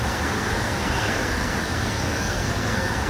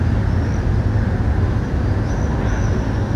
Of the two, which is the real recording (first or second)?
second